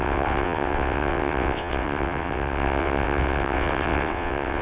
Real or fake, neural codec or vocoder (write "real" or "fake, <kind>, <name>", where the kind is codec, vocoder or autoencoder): fake, vocoder, WaveNeXt